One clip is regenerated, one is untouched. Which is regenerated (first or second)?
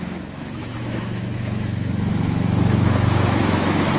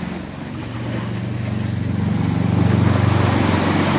first